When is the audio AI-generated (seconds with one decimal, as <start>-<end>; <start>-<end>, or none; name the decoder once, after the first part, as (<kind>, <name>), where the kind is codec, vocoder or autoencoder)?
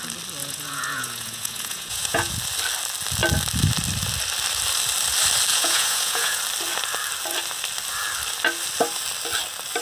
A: 0.4-2.3 (vocoder, Vocos); 5.5-6.4